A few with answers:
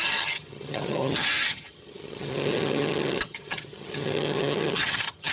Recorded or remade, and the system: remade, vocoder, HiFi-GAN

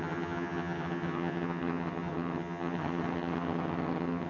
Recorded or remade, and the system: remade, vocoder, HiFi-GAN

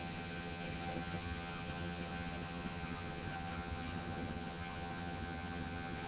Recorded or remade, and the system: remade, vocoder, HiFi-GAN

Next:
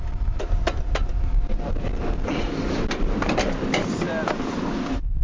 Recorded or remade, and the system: recorded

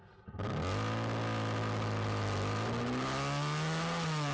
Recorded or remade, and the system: recorded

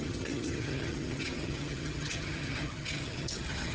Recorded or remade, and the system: remade, vocoder, HiFi-GAN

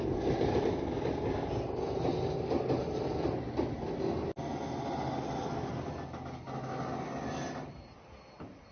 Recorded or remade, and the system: recorded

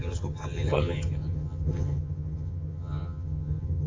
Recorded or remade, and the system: remade, vocoder, HiFi-GAN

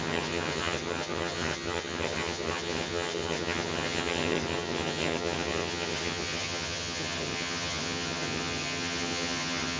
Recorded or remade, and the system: remade, vocoder, HiFi-GAN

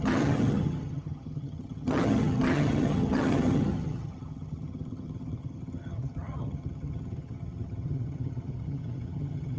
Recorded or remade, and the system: remade, vocoder, HiFi-GAN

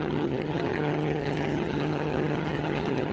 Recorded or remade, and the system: remade, vocoder, HiFi-GAN